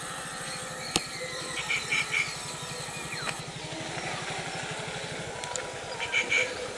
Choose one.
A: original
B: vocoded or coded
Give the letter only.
A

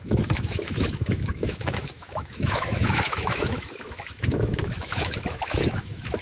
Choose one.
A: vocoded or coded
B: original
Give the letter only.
A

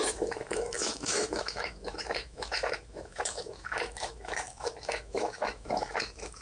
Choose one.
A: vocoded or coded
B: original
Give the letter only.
A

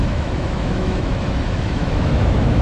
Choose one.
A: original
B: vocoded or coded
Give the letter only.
B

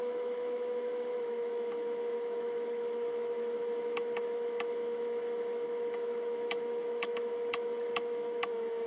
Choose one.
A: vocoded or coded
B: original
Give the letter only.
A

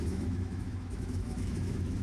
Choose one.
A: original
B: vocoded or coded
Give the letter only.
B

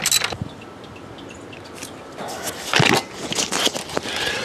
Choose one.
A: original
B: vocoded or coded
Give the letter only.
A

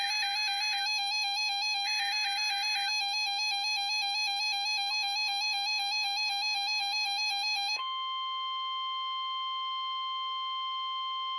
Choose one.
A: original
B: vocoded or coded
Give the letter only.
B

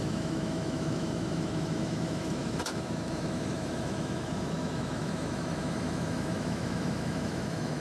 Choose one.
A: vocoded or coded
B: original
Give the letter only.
A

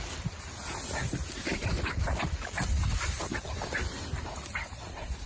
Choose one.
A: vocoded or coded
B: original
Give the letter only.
B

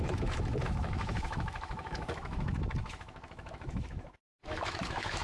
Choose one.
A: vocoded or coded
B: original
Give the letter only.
A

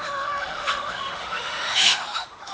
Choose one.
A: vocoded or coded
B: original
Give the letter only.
A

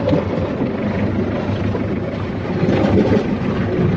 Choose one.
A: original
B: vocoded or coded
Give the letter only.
A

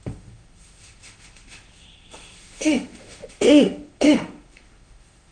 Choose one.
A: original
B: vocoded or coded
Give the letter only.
B